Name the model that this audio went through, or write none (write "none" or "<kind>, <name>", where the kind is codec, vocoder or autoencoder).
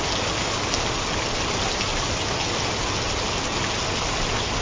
none